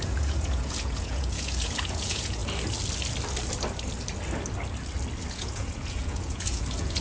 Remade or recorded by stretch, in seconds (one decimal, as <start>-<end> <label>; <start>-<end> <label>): 0.0-2.4 remade; 2.4-5.3 recorded; 5.3-7.0 remade